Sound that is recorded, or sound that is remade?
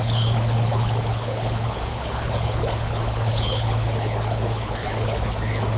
remade